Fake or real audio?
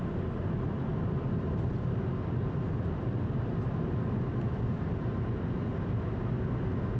real